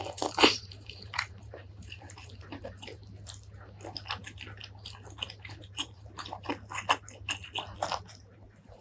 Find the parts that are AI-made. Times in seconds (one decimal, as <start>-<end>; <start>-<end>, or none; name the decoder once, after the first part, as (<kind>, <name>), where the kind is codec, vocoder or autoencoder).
0.0-3.0 (vocoder, BigVGAN v2); 5.6-6.5; 8.2-8.8